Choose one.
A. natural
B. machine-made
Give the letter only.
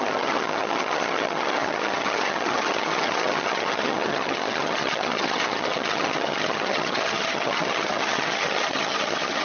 B